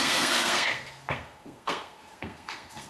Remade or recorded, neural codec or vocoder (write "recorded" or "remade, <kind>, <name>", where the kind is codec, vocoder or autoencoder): remade, codec, SNAC